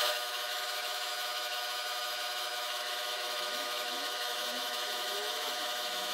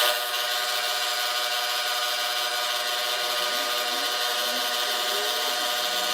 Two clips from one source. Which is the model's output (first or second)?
first